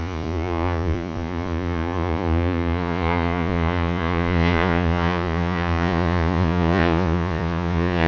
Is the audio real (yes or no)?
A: no